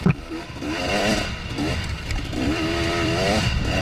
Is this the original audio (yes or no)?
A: no